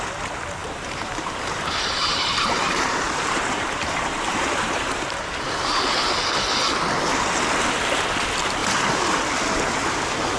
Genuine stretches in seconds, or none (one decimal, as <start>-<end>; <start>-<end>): 0.0-0.6; 5.8-8.6; 9.2-10.4